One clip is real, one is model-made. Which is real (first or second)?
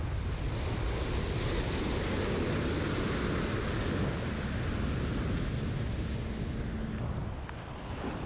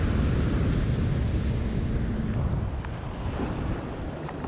first